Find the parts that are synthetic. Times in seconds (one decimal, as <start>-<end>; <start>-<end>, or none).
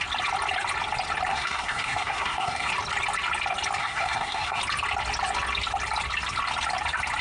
1.3-2.7; 3.8-4.6